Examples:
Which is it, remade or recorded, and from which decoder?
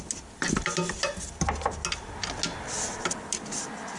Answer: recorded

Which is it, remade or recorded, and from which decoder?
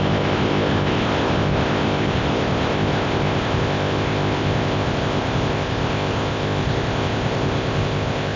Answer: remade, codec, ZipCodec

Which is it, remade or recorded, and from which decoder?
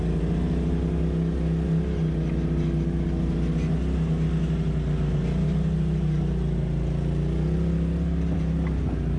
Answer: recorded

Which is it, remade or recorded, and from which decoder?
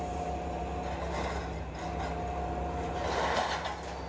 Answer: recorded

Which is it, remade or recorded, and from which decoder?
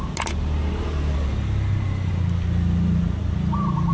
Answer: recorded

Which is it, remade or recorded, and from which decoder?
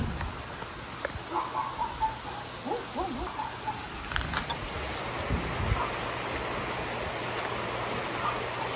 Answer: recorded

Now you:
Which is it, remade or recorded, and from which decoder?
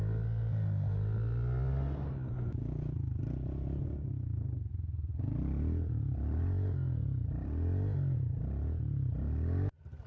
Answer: recorded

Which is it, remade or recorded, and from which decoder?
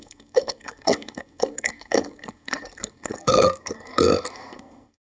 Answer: remade, codec, SNAC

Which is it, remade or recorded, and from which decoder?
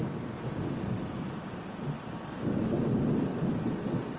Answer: recorded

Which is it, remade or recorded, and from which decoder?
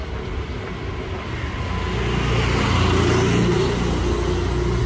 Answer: recorded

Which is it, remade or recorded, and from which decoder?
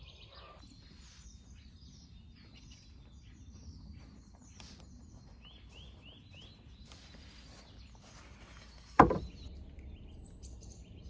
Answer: recorded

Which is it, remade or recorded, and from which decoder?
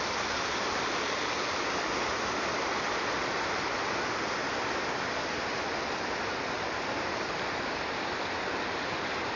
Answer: recorded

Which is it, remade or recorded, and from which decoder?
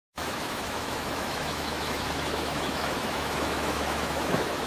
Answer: remade, autoencoder, DAC-VAE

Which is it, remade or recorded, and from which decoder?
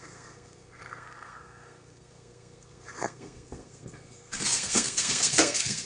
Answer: remade, codec, SNAC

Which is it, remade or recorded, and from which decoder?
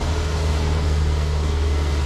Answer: remade, codec, SNAC